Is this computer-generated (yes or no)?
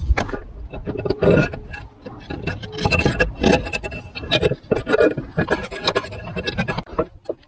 no